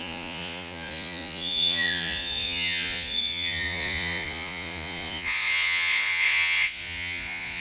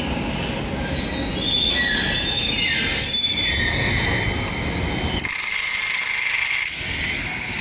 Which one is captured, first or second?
second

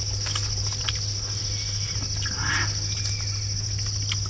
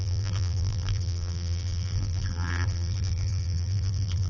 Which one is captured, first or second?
first